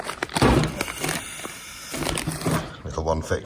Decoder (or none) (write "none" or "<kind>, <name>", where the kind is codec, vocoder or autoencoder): none